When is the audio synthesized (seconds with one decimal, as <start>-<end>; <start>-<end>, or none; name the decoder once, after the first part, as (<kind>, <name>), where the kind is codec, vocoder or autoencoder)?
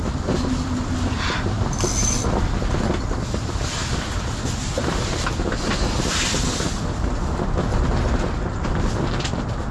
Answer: none